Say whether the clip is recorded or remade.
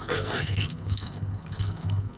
remade